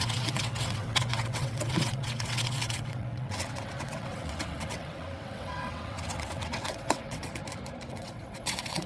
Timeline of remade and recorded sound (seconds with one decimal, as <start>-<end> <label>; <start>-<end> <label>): 0.0-7.3 remade; 7.3-7.9 recorded; 7.9-8.9 remade